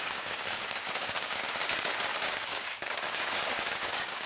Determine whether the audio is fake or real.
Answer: fake